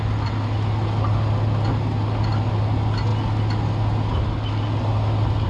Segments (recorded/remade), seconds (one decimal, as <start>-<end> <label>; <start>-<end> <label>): 0.0-5.5 recorded

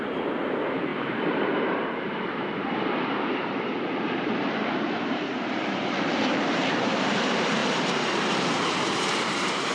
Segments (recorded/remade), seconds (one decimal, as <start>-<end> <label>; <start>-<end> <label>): 0.0-9.7 remade

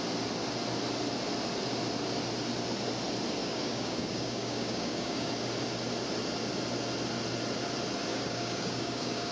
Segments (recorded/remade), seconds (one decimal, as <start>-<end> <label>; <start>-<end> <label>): 0.0-3.4 recorded; 3.4-5.3 remade; 5.3-8.1 recorded; 8.1-9.3 remade

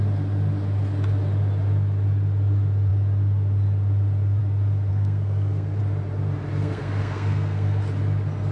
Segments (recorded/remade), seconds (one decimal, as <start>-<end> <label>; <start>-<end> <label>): 0.0-4.9 recorded; 4.9-5.8 remade; 5.8-6.6 recorded; 6.6-7.8 remade; 7.8-8.5 recorded

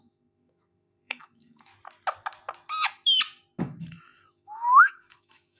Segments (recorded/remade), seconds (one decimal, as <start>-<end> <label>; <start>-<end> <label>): 0.0-1.7 remade; 1.7-3.6 recorded; 3.6-5.6 remade

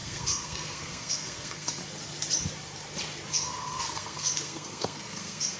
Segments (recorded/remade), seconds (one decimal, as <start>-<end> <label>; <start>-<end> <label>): 0.0-1.8 remade; 1.8-3.3 recorded; 3.3-5.6 remade

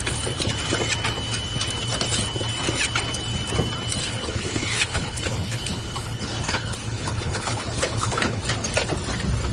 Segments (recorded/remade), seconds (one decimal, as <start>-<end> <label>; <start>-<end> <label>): 0.0-4.0 recorded; 4.0-8.4 remade; 8.4-9.5 recorded